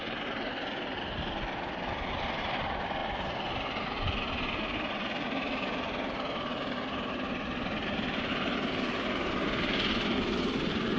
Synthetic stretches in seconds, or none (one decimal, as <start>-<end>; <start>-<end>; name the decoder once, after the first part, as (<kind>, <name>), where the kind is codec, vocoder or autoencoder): none